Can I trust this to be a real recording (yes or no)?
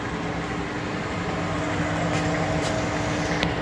yes